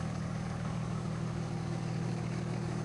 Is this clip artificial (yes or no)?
yes